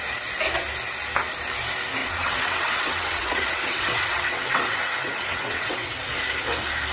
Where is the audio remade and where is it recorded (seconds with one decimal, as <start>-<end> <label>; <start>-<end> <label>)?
0.0-2.0 recorded; 2.0-6.1 remade; 6.1-6.9 recorded